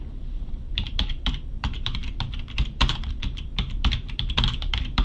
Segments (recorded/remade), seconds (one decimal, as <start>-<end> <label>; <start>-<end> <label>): 0.0-5.0 remade